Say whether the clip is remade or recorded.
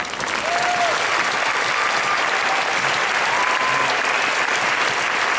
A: recorded